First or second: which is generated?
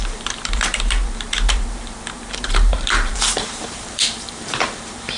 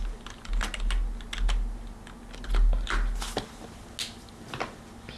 first